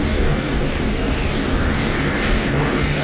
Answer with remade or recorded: remade